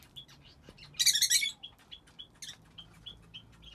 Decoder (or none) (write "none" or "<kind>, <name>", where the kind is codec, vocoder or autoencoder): none